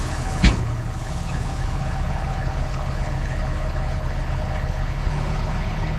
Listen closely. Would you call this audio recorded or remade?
remade